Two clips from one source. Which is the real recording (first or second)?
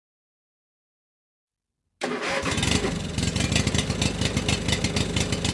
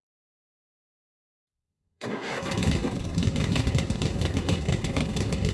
first